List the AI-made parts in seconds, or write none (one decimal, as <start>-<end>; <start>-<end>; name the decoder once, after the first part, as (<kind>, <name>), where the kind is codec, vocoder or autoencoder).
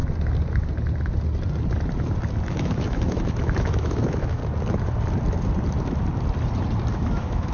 2.5-4.4 (autoencoder, DAC-VAE); 6.9-7.5